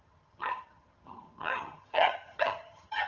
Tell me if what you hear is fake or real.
fake